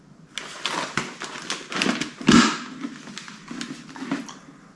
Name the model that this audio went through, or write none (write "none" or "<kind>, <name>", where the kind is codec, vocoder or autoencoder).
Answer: none